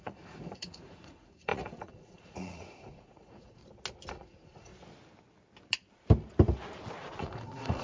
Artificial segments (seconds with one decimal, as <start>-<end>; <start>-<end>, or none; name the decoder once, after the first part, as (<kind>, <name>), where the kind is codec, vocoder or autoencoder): 0.0-3.6 (vocoder, Vocos); 4.1-4.7; 7.2-7.8